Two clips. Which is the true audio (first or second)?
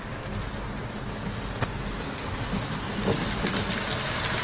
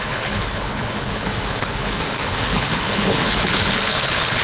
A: first